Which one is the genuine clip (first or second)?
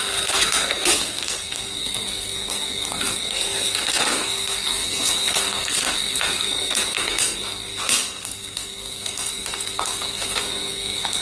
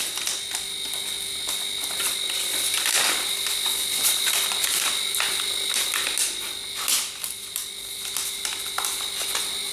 second